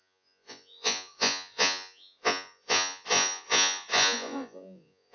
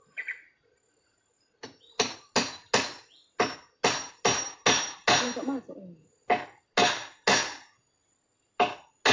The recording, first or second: second